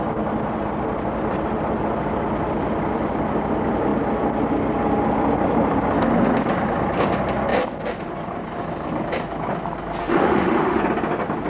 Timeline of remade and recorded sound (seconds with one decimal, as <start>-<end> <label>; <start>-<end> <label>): 0.0-10.0 recorded; 10.0-10.8 remade; 10.8-11.5 recorded